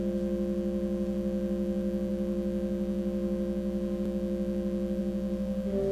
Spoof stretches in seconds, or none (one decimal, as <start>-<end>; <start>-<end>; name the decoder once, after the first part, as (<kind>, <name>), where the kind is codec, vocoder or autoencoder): none